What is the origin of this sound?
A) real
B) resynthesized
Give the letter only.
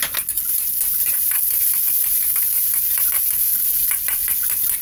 A